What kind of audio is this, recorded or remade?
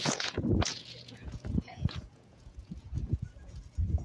remade